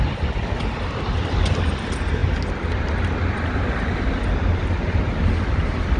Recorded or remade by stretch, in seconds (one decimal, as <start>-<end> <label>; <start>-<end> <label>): 0.0-6.0 recorded